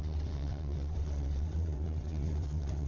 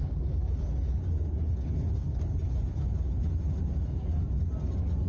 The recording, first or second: second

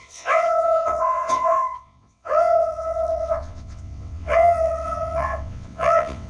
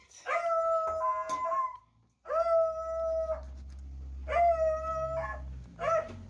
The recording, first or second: second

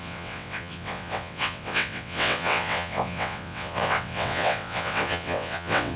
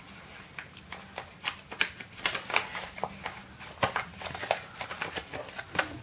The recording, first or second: second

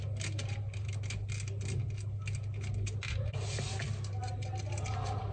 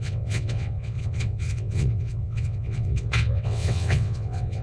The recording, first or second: first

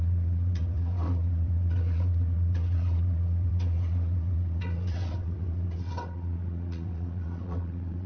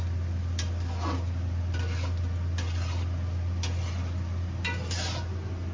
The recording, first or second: second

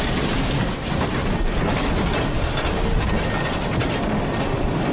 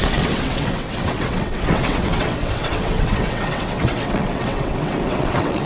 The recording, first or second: first